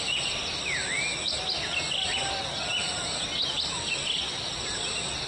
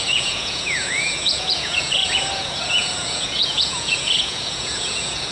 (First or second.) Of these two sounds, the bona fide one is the first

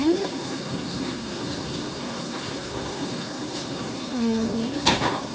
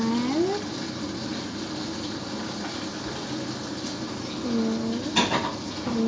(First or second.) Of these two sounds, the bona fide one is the second